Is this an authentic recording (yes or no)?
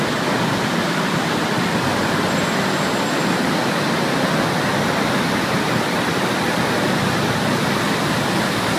yes